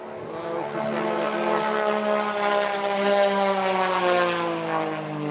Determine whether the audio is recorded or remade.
recorded